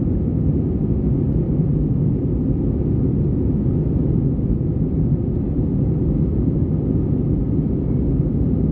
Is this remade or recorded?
recorded